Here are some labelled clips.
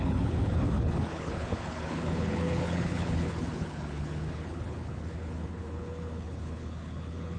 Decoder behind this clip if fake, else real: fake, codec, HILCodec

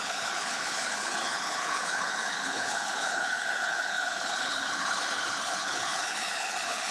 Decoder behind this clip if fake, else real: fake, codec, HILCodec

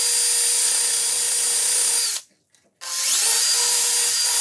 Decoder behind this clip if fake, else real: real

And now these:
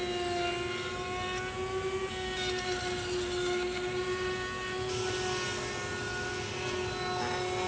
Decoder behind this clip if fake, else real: real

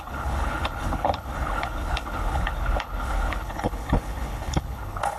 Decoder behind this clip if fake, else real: fake, codec, HILCodec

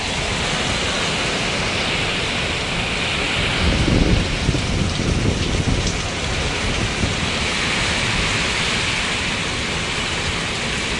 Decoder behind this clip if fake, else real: real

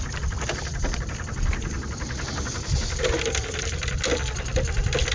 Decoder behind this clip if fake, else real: real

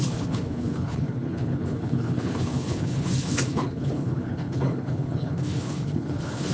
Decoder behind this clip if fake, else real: fake, codec, HILCodec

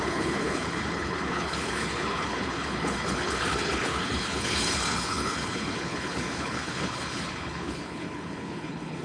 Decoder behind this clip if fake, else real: fake, codec, HILCodec